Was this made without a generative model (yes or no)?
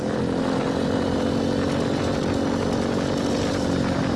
yes